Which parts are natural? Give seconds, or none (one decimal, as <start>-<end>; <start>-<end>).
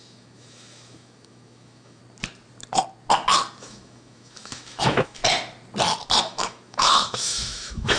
2.0-3.6; 5.2-6.2